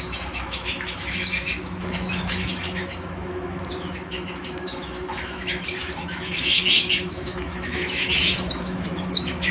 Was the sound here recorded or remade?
remade